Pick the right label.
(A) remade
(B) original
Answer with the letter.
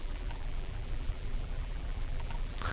A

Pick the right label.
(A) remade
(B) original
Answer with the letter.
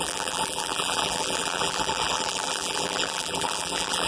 A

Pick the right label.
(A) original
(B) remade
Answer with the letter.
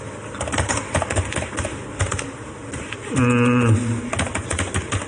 A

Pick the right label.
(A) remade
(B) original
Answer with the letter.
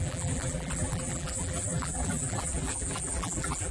A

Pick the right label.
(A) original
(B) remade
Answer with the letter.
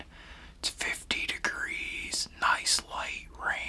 A